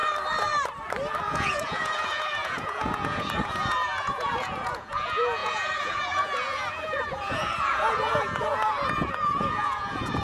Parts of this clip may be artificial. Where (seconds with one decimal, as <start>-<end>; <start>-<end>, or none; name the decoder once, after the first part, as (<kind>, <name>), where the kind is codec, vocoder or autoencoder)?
1.2-10.2 (vocoder, Vocos)